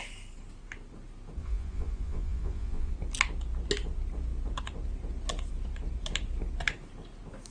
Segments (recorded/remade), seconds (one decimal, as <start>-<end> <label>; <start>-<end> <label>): 0.0-1.4 recorded; 1.4-2.9 remade; 2.9-7.5 recorded